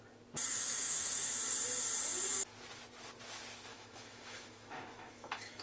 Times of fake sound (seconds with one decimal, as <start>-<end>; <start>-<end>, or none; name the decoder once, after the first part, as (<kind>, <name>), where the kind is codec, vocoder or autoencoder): 0.5-1.4 (autoencoder, DAC-VAE); 3.7-5.6